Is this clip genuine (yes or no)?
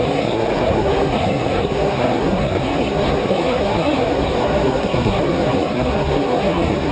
no